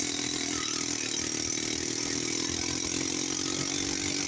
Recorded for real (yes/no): yes